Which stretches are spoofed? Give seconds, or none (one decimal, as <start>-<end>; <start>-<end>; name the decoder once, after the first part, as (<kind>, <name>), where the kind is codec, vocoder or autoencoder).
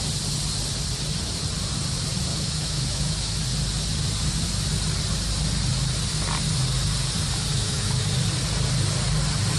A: 2.3-3.3 (autoencoder, DAC-VAE); 7.5-8.0